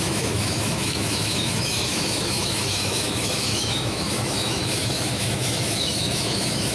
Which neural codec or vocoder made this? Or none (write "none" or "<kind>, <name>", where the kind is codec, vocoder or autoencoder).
autoencoder, DAC-VAE